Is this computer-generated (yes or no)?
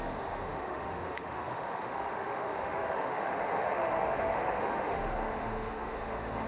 yes